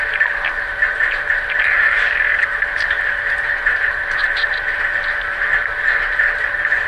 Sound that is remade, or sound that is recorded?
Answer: remade